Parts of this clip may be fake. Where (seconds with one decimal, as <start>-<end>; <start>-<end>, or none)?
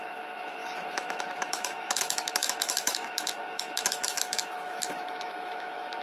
0.0-6.0